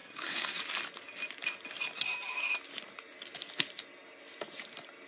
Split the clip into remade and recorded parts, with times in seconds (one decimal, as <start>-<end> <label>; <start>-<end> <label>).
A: 0.0-0.6 remade; 0.6-5.1 recorded